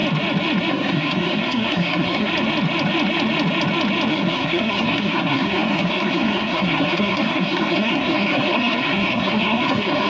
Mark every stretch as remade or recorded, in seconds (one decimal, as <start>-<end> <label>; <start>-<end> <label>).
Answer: 0.0-0.7 recorded; 0.7-2.3 remade; 2.3-4.1 recorded; 4.1-10.1 remade